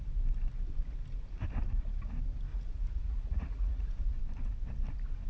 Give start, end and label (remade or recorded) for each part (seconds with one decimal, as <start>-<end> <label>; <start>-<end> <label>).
0.0-2.5 recorded; 2.5-4.2 remade; 4.2-5.3 recorded